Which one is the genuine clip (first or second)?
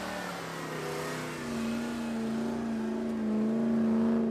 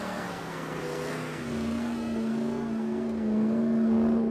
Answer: first